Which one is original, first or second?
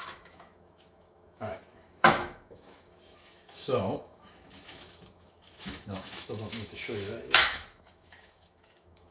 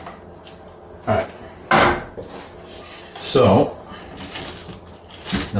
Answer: second